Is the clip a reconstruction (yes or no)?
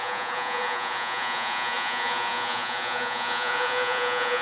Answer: yes